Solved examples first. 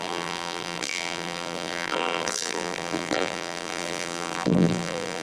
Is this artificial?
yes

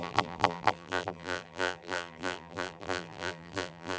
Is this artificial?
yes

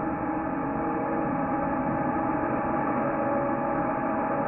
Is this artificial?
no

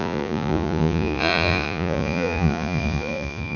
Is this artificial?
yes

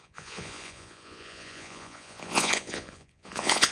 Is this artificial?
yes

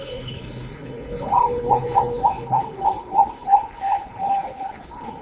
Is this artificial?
yes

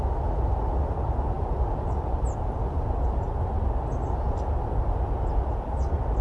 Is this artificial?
no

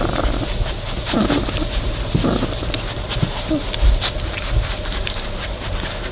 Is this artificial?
no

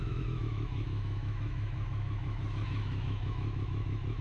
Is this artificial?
yes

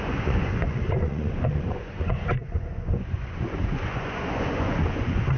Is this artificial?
yes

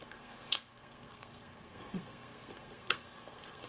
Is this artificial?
yes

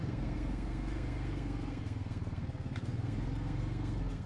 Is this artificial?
yes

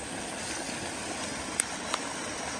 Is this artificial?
no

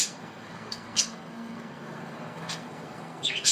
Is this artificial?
yes